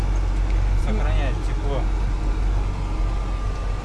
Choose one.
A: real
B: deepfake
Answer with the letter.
A